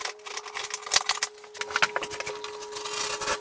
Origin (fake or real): real